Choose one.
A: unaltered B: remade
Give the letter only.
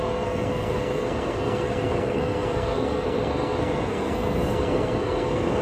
B